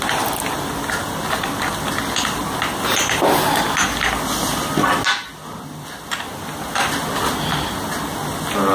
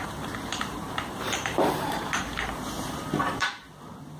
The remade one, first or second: second